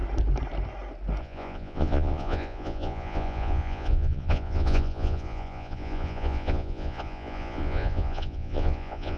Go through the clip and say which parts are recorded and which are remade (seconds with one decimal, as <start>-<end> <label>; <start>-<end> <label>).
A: 0.0-1.2 recorded; 1.2-9.2 remade